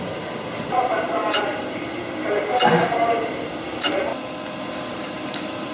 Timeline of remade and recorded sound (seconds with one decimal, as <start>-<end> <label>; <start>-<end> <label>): 0.0-2.0 remade; 2.0-2.8 recorded; 2.8-4.1 remade; 4.1-4.6 recorded; 4.6-5.7 remade